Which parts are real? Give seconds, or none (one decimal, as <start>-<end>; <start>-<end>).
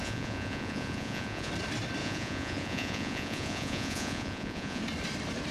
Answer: 1.5-2.0; 4.8-5.5